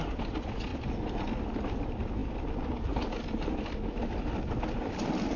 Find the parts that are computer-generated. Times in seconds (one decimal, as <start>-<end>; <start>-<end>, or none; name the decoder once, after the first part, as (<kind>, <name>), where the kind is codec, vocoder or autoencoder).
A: none